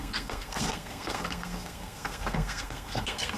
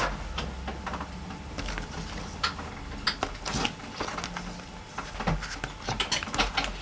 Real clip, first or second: second